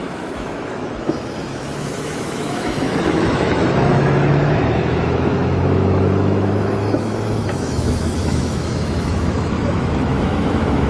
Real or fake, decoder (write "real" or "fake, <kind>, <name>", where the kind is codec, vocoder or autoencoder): fake, autoencoder, DAC-VAE